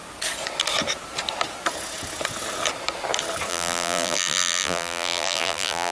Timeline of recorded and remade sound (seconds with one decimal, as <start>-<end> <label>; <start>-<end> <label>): 0.0-3.5 recorded; 3.5-5.9 remade